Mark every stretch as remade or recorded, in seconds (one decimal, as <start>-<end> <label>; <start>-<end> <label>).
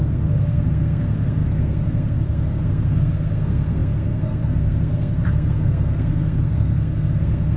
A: 0.0-7.6 remade